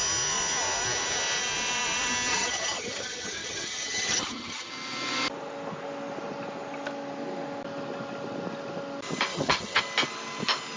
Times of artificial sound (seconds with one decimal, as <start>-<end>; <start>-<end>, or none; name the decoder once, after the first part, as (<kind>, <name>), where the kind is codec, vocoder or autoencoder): 2.3-4.7 (vocoder, HiFi-GAN); 9.3-9.8